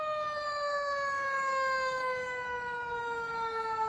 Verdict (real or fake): fake